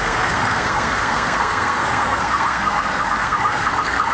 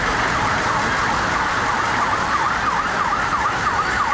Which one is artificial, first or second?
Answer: first